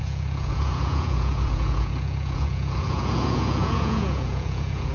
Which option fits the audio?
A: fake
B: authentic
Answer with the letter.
A